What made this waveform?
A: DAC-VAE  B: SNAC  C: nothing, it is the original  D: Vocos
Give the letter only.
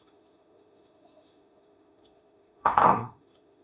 A